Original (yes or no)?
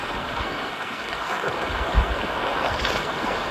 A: no